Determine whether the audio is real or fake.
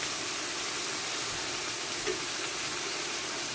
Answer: real